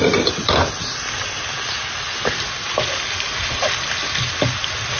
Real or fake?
real